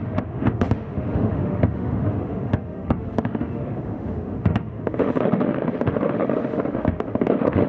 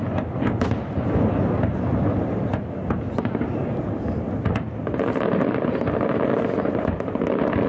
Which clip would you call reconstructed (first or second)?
first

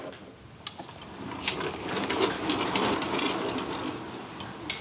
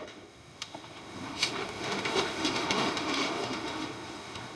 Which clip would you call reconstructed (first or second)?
second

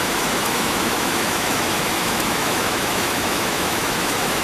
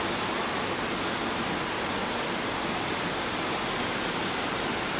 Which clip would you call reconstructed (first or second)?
first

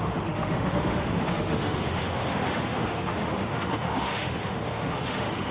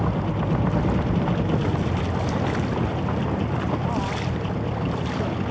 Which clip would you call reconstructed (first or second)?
first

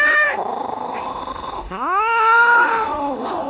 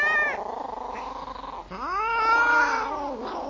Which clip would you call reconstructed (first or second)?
first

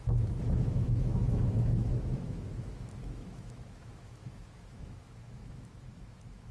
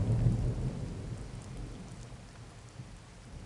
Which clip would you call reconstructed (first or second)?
first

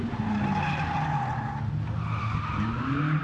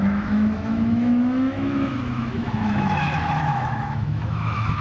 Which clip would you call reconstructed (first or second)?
second